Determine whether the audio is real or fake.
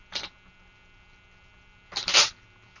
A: real